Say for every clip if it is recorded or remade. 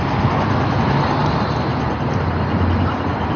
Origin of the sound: recorded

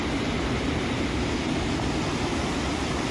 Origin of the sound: remade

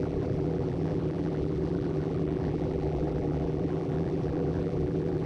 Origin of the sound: remade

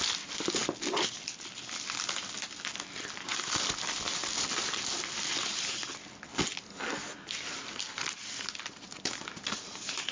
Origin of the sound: recorded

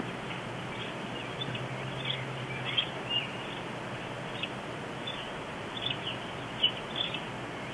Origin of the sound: recorded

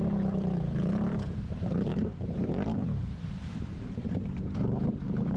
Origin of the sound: remade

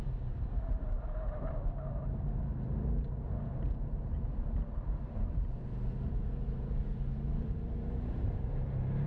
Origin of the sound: remade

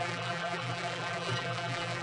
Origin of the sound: remade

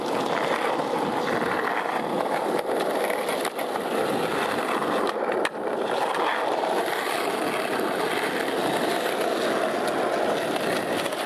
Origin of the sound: recorded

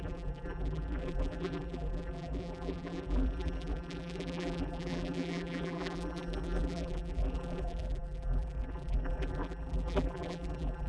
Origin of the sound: remade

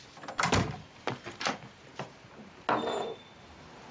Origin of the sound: recorded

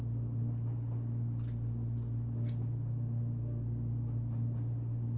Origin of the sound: recorded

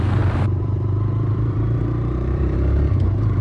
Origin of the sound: remade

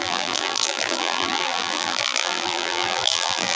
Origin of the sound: remade